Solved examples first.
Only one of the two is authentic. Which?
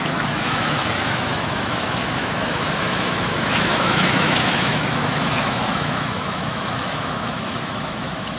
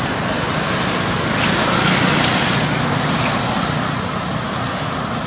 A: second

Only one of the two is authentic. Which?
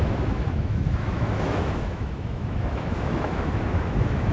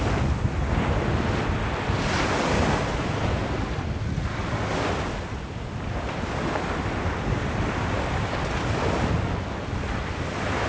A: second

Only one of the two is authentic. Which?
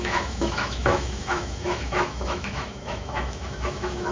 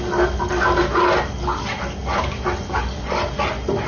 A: second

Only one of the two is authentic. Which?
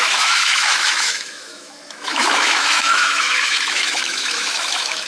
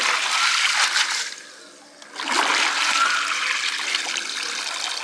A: second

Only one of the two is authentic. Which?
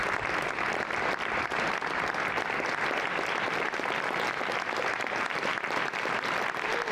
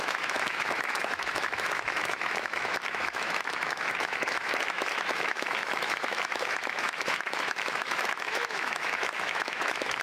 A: first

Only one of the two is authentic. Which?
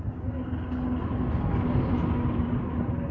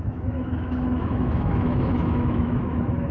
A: first